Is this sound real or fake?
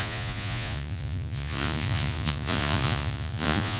fake